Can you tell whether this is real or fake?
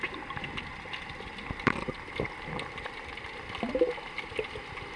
real